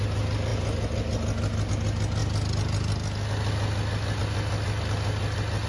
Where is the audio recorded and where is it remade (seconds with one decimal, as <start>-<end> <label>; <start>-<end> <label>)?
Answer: 0.0-5.7 recorded